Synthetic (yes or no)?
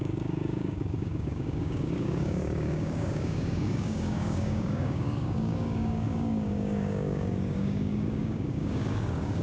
yes